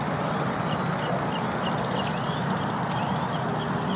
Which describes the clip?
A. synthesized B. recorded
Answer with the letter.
B